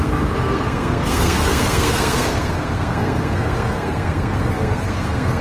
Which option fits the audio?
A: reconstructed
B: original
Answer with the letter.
A